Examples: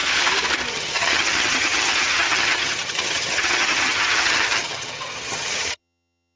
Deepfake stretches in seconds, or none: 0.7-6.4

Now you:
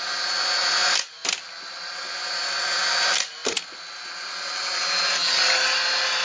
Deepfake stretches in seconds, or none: none

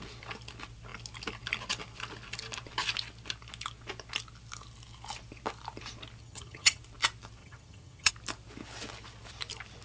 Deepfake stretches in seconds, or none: 6.2-6.8; 7.4-8.1